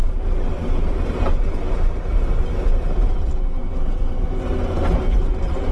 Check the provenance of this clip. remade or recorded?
remade